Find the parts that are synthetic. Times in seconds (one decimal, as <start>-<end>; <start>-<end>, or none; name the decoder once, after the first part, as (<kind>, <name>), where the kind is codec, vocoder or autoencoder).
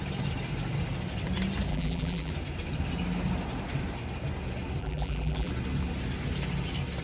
1.7-2.3 (vocoder, BigVGAN v2); 4.8-5.5